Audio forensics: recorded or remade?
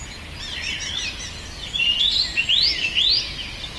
recorded